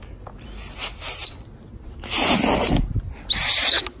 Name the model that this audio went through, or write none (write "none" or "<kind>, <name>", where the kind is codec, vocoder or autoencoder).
none